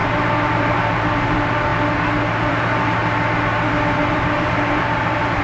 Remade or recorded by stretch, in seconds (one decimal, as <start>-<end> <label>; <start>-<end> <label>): 0.0-1.7 remade; 1.7-2.5 recorded; 2.5-3.0 remade; 3.0-4.0 recorded; 4.0-5.4 remade